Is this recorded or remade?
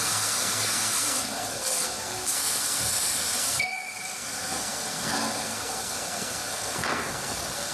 remade